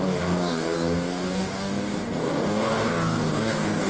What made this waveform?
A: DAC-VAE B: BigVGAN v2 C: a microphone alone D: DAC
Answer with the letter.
D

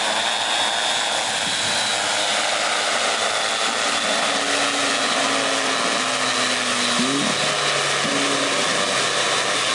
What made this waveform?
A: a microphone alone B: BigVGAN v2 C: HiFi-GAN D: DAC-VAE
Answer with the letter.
A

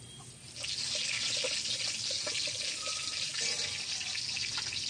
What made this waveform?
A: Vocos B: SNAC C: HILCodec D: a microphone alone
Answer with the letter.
D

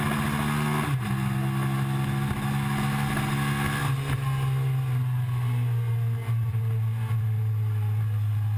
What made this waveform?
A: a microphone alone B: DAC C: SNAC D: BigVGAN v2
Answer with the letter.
A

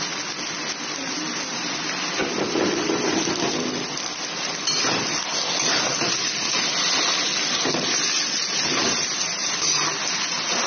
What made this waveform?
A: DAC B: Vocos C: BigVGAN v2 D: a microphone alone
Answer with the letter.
D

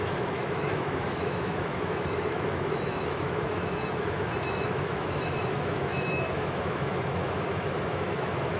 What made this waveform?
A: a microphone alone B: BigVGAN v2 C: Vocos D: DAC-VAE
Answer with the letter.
D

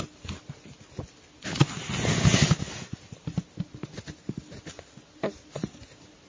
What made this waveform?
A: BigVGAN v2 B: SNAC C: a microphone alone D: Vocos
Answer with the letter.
C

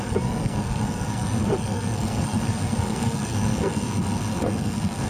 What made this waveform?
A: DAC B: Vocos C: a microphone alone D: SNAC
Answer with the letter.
D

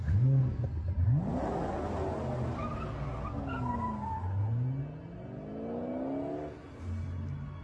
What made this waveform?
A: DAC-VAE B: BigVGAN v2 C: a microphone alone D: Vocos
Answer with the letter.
C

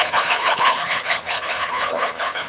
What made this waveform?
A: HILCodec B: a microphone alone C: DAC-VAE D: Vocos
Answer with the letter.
A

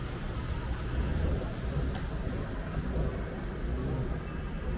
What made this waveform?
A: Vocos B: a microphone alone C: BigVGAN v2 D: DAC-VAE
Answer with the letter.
B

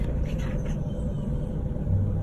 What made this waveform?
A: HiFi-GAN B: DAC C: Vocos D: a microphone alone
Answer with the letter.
D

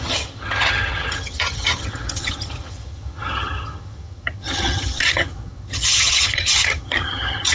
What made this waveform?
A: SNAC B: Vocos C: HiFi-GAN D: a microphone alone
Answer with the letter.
C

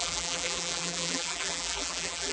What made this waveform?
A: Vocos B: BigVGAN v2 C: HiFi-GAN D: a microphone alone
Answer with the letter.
B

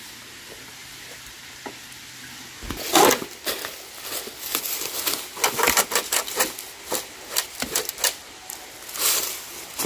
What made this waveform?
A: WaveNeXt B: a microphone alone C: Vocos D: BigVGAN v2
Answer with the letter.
B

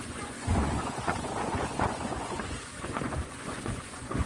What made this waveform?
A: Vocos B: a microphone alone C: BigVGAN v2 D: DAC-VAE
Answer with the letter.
A